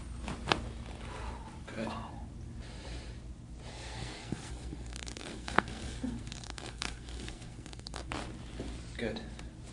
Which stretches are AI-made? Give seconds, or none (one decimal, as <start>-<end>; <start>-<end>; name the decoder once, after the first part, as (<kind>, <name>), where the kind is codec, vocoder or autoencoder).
3.7-8.1 (codec, SNAC)